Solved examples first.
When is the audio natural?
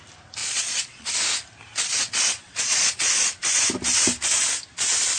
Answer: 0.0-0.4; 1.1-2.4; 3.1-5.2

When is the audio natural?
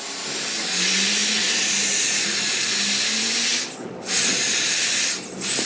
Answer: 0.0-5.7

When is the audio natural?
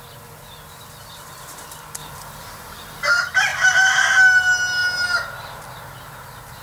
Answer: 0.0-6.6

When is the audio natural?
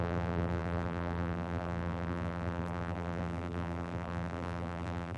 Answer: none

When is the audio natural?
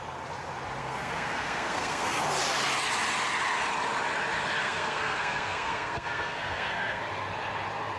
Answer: 0.0-0.8; 2.2-4.6; 7.0-8.0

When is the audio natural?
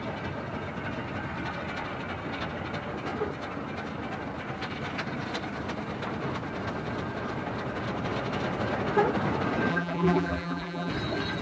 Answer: 0.0-9.7; 10.9-11.4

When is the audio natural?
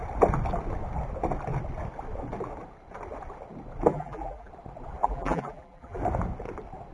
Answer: 0.0-3.9; 4.5-5.0; 6.0-6.9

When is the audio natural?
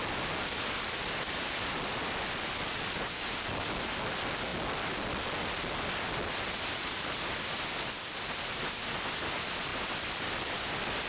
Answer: 0.0-11.1